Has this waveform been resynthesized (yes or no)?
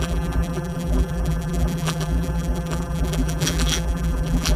yes